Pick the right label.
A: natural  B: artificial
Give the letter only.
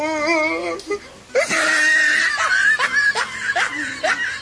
A